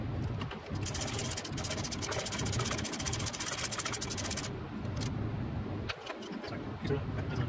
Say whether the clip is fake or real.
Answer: real